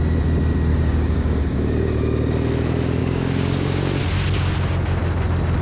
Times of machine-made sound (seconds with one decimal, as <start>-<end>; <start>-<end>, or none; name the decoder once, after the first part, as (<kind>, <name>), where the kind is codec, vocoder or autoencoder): 0.7-2.0 (codec, DAC); 3.0-4.0